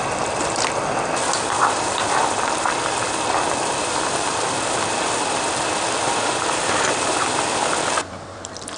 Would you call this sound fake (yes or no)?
yes